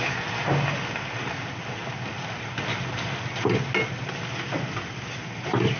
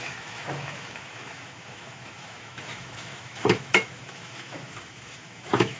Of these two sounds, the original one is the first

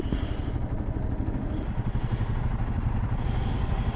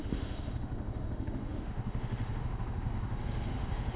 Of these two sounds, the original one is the first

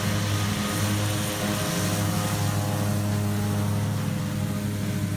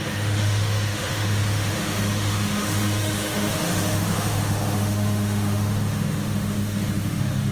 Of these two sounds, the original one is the first